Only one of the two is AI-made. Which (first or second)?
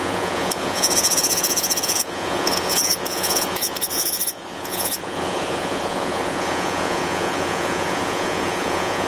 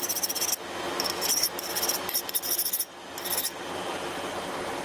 first